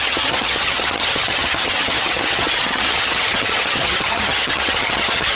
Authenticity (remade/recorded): remade